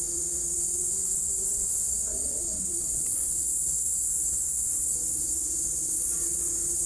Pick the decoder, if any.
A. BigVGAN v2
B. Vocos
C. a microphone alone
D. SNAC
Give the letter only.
B